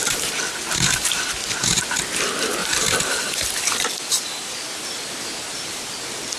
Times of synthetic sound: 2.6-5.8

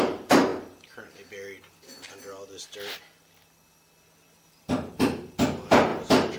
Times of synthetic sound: 0.0-0.5; 4.3-6.4

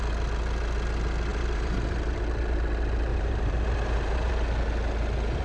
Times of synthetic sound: 1.3-2.2; 3.1-4.3